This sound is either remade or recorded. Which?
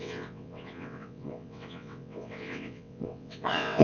remade